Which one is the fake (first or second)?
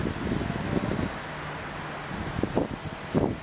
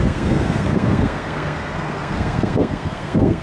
second